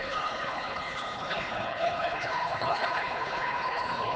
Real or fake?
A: fake